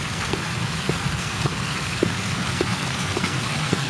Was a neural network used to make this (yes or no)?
yes